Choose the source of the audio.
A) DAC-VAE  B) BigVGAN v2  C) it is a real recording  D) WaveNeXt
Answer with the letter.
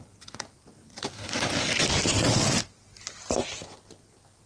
C